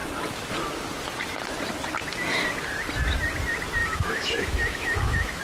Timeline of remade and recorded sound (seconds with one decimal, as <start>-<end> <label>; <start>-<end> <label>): 0.0-3.8 recorded; 3.8-5.4 remade